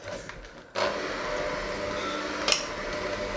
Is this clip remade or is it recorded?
recorded